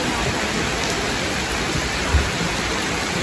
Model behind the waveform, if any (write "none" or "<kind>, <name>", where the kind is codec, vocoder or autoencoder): vocoder, BigVGAN v2